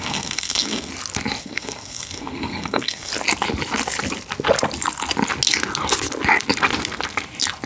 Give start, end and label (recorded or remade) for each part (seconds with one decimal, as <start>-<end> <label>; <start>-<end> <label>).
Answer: 0.0-0.9 remade; 0.9-1.4 recorded; 1.4-3.1 remade; 3.1-7.7 recorded